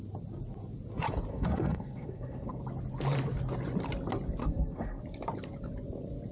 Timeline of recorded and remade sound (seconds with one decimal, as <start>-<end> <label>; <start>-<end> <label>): 0.0-1.3 recorded; 1.3-2.6 remade; 2.6-4.4 recorded; 4.4-5.0 remade; 5.0-6.3 recorded